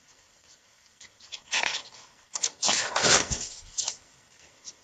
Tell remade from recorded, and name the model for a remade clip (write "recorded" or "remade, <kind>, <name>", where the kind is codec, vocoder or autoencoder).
remade, codec, SNAC